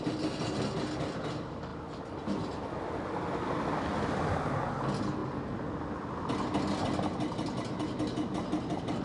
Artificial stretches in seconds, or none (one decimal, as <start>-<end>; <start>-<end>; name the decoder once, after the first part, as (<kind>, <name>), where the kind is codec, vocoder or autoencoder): none